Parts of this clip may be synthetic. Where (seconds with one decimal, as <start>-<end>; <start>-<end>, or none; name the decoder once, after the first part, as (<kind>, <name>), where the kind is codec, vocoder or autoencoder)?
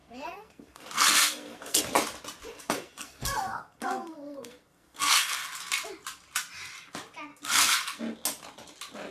0.0-1.8 (codec, SNAC); 2.5-5.5; 7.3-8.0